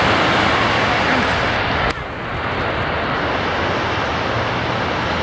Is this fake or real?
real